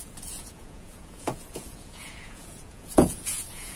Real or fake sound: fake